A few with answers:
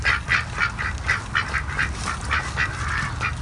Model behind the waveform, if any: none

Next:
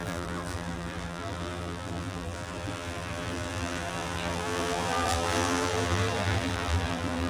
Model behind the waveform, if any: vocoder, BigVGAN v2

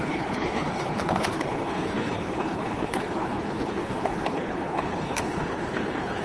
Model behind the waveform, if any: codec, HILCodec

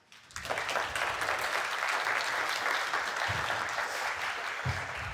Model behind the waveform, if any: none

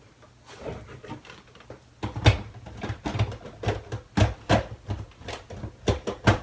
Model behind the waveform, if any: none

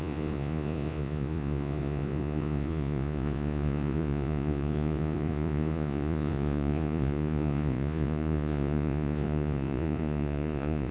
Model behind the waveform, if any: vocoder, Vocos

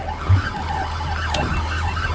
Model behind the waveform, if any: none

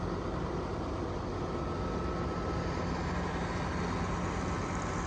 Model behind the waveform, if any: none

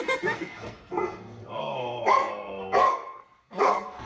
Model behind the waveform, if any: codec, SNAC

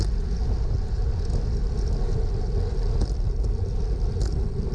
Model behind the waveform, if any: none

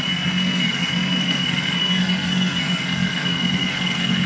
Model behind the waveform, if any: codec, SNAC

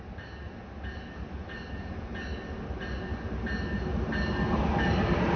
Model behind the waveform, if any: none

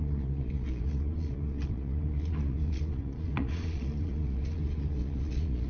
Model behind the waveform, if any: vocoder, Vocos